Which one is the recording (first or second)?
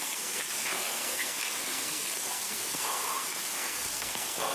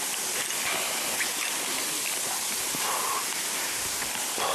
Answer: second